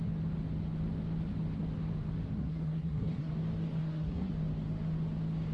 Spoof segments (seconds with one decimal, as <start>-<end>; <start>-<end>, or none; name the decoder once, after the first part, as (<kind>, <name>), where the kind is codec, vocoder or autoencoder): 2.4-3.3 (codec, SNAC); 3.8-4.3